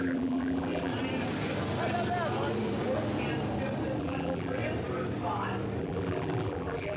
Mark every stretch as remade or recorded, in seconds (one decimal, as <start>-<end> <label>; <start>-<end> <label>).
0.0-0.9 remade; 0.9-4.0 recorded; 4.0-4.6 remade; 4.6-5.8 recorded; 5.8-7.0 remade